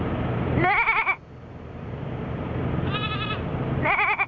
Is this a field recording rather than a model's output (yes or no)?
no